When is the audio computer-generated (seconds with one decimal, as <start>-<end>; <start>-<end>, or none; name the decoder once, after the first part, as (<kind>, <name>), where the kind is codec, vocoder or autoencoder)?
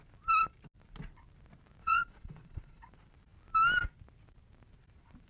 1.8-2.9 (vocoder, Vocos)